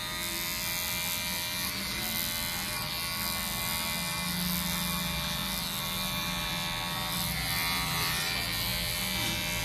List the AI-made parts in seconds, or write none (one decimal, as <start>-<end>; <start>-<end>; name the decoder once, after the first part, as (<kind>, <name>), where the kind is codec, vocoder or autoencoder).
none